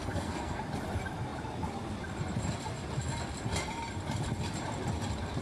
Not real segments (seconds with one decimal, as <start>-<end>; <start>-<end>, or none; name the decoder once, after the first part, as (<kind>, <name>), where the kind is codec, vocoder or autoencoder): 0.0-0.6 (codec, SNAC)